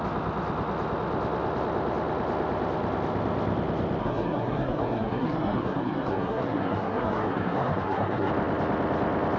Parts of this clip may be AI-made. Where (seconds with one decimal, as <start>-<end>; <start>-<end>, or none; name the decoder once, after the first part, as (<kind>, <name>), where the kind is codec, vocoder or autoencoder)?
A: 4.0-8.3 (codec, SNAC)